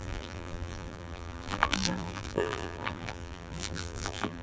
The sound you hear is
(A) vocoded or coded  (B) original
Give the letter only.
A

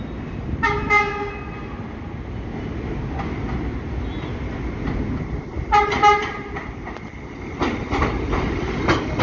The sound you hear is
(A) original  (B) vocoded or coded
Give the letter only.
A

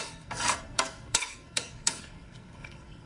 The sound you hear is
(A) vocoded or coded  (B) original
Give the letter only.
A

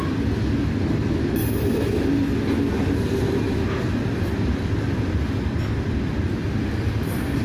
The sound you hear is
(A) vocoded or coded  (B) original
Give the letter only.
B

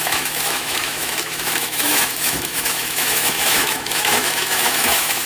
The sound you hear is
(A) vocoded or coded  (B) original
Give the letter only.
A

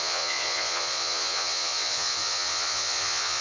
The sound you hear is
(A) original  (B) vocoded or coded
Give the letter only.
B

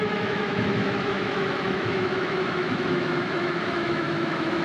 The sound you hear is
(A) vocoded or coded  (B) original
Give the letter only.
A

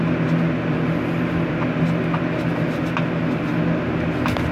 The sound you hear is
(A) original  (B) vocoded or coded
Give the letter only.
A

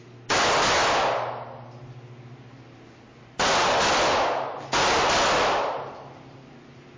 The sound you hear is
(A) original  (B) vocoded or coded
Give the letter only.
A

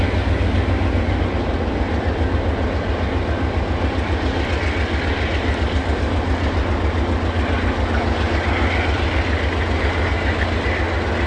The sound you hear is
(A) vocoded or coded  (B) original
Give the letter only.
B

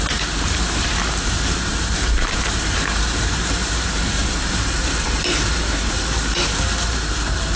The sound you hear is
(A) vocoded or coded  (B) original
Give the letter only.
A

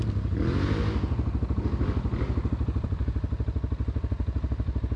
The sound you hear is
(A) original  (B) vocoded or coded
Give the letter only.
A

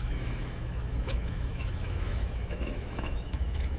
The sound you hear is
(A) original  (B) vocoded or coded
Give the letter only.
B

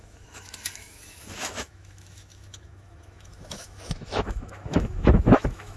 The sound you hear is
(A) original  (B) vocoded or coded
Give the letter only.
B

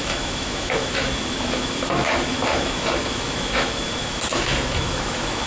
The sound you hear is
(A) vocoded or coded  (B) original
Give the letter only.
A